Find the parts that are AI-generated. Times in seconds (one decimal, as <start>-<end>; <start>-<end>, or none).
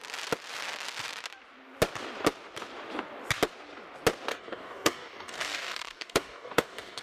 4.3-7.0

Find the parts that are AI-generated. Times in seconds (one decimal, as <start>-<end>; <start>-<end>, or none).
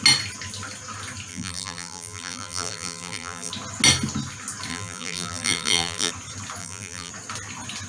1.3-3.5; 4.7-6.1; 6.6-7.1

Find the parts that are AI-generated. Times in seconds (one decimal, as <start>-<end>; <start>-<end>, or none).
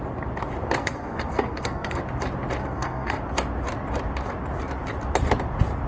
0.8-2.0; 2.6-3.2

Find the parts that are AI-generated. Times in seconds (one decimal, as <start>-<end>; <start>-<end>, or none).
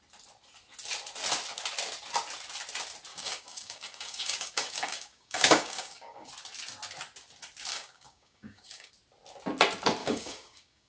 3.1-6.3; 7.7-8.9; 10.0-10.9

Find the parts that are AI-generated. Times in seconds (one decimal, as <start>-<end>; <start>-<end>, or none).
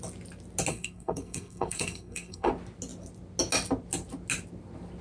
0.7-2.5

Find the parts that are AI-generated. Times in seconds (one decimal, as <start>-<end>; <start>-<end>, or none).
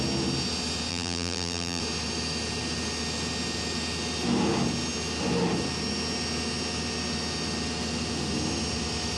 0.9-1.8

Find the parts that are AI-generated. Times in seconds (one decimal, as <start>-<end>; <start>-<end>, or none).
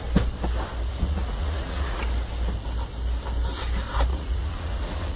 0.9-2.0; 4.1-5.2